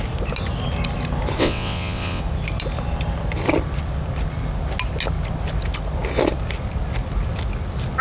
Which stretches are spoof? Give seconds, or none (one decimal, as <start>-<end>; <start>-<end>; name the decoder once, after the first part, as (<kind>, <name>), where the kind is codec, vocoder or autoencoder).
1.4-2.2 (vocoder, WaveNeXt)